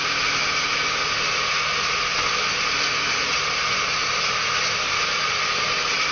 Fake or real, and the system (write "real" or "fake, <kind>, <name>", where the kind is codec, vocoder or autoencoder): real